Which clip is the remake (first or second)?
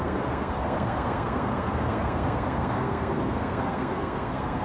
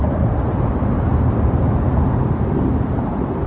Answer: first